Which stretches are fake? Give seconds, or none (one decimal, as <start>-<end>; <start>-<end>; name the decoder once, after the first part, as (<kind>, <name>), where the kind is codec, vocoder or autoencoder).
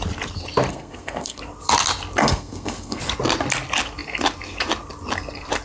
0.7-1.4 (codec, SNAC); 2.2-3.0